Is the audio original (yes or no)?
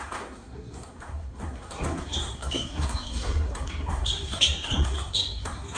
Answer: no